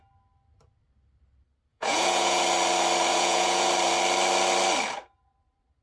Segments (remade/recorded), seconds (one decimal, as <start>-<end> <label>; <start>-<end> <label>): 0.0-1.7 recorded; 1.7-2.4 remade; 2.4-3.1 recorded; 3.1-3.7 remade; 3.7-5.8 recorded